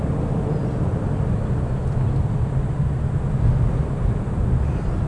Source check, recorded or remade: recorded